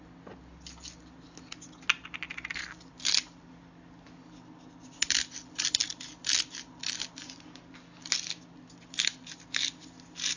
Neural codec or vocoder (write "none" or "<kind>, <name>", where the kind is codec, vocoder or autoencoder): none